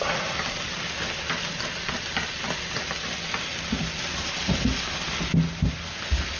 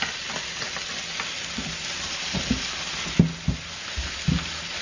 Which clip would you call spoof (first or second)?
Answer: second